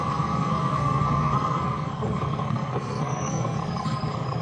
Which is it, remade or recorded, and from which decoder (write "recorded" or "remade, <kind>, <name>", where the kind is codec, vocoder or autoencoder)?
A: remade, codec, SNAC